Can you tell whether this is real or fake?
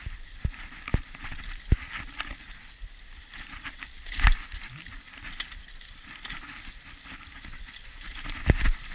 real